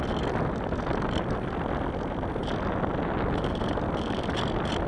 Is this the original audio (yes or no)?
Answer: yes